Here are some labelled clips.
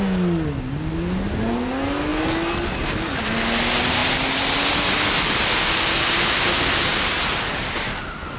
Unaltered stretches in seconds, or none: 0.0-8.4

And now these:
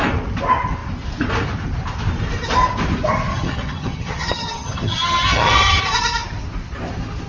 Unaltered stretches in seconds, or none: 0.0-3.3; 5.8-7.3